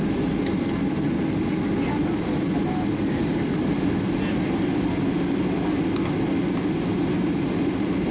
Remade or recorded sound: recorded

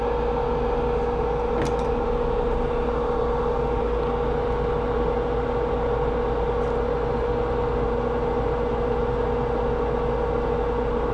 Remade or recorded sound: recorded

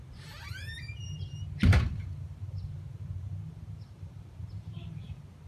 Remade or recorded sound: remade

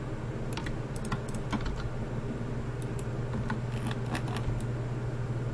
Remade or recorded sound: recorded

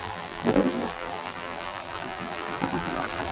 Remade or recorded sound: remade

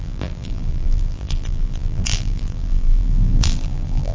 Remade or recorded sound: remade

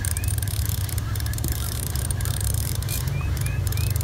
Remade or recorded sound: remade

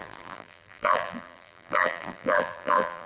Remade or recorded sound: remade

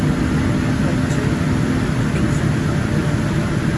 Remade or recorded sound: recorded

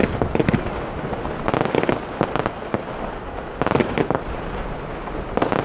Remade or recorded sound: recorded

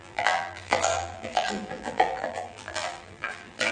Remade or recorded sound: remade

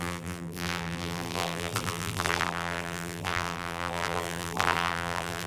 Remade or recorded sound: remade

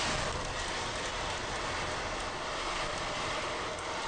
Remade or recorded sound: recorded